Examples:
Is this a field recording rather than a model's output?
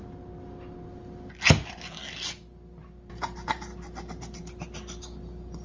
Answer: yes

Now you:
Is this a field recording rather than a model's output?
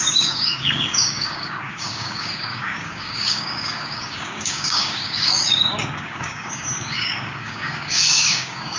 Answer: no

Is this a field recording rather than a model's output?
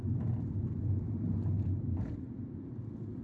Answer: yes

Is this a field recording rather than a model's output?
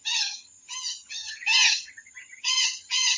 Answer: no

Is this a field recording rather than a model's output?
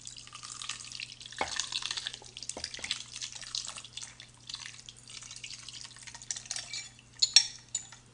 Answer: yes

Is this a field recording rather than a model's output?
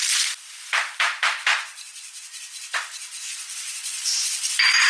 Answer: no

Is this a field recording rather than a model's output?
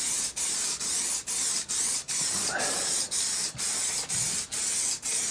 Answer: yes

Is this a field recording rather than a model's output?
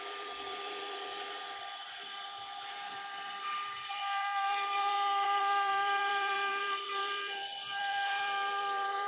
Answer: no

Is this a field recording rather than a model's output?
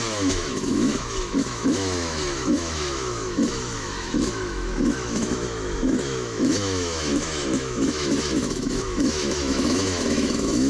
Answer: no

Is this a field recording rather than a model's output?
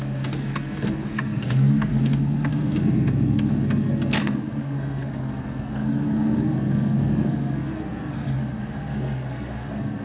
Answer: no